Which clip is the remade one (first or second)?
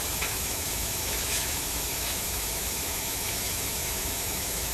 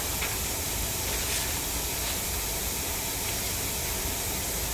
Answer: first